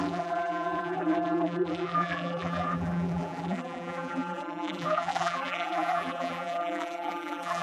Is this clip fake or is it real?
fake